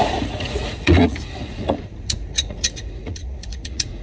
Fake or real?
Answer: fake